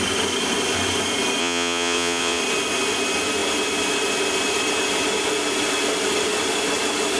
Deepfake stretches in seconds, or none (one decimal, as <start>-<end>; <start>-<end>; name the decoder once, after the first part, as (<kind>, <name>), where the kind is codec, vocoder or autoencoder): 1.4-2.4 (vocoder, Vocos)